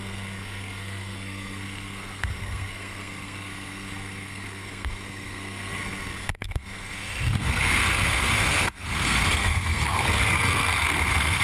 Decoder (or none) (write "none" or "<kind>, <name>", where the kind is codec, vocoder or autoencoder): codec, SNAC